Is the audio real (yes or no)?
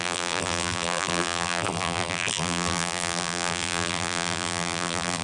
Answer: no